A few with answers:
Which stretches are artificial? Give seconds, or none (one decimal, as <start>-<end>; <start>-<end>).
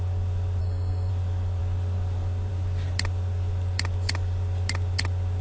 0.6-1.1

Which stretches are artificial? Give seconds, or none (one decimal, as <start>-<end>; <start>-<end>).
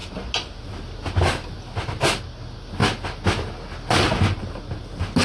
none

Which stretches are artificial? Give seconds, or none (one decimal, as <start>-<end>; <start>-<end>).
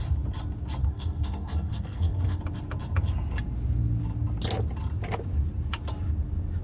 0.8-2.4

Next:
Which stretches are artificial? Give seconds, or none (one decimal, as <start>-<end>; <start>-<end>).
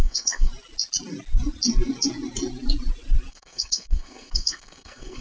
0.0-0.5; 3.3-5.2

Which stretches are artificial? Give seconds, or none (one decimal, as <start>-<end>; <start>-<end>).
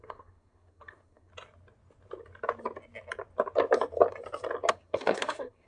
0.0-1.3; 4.7-5.7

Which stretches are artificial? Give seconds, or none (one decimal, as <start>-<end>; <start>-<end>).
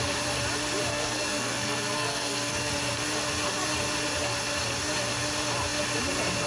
0.9-2.7